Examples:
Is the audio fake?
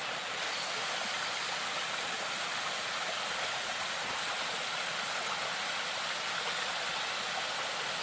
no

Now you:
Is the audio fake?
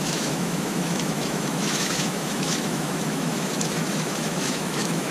yes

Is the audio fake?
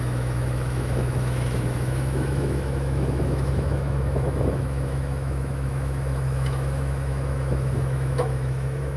yes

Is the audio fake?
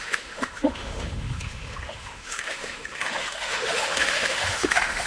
yes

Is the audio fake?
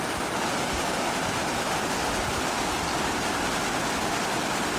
no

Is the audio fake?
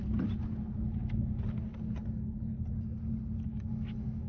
no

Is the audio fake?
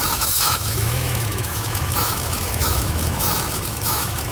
yes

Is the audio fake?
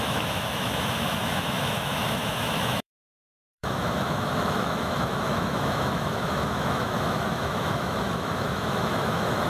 yes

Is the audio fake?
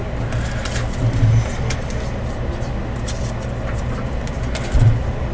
no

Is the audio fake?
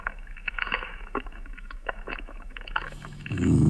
yes